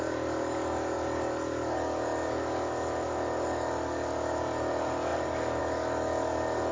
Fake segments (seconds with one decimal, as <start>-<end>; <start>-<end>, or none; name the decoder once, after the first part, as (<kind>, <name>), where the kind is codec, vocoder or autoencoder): 0.0-6.7 (codec, DAC)